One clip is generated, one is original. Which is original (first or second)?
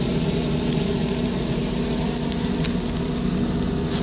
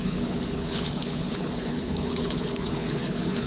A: first